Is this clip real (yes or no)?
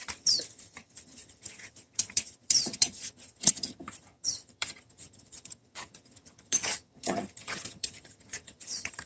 no